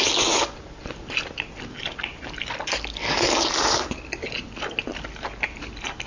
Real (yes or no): yes